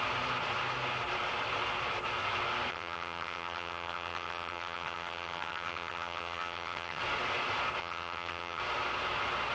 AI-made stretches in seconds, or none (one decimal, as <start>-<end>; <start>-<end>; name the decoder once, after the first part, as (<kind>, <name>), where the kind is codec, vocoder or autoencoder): 2.7-7.0 (vocoder, HiFi-GAN); 7.8-8.6